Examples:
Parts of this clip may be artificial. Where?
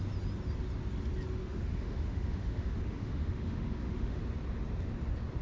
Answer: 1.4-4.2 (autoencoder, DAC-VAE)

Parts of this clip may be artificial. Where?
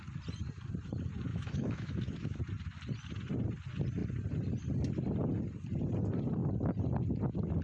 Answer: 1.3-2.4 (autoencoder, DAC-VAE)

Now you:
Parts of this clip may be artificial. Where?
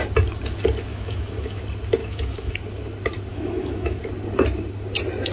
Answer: 0.9-1.6 (autoencoder, DAC-VAE); 2.0-2.5; 3.3-4.0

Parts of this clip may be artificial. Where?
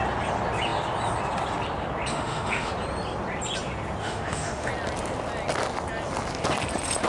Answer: 2.1-2.7 (autoencoder, DAC-VAE); 4.0-4.7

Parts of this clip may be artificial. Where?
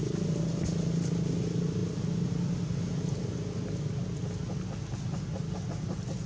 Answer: none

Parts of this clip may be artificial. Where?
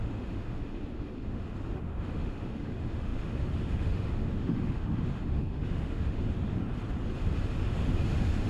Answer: 0.0-6.6 (autoencoder, DAC-VAE); 7.5-8.5